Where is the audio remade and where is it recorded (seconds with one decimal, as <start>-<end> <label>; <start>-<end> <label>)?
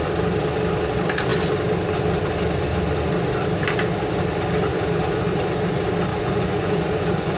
0.0-4.7 recorded; 4.7-5.2 remade; 5.2-6.1 recorded; 6.1-7.4 remade